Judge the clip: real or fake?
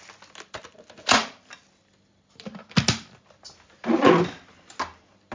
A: real